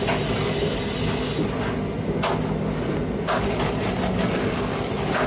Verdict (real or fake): real